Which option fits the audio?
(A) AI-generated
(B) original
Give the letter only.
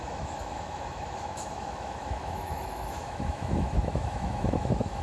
A